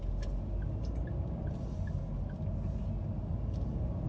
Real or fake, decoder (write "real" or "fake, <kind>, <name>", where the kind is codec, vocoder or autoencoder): real